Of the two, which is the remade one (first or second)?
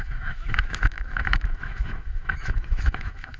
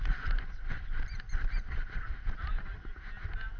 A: first